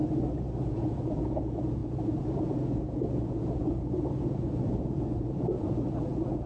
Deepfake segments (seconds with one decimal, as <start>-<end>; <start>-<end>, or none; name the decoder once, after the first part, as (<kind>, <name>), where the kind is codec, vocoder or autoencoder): 0.6-6.5 (vocoder, Vocos)